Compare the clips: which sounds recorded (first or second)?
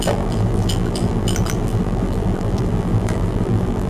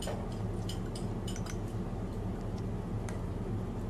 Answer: second